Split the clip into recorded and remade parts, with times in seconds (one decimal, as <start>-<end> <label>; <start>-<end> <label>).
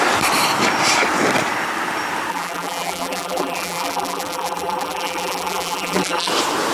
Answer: 0.0-2.3 recorded; 2.3-6.3 remade; 6.3-6.7 recorded